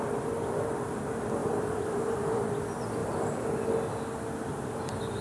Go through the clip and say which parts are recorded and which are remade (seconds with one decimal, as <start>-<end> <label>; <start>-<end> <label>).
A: 0.0-1.4 recorded; 1.4-2.5 remade; 2.5-3.0 recorded; 3.0-3.5 remade; 3.5-5.2 recorded